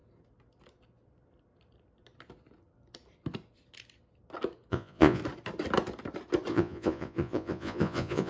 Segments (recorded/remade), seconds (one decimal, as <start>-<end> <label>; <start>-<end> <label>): 0.0-4.7 recorded; 4.7-5.2 remade; 5.2-6.5 recorded; 6.5-8.3 remade